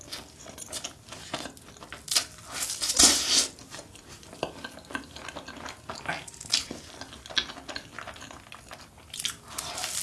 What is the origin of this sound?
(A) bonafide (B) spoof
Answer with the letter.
A